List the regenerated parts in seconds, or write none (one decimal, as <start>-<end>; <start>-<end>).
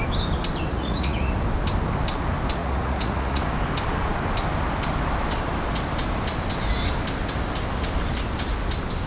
0.7-1.3; 2.6-3.4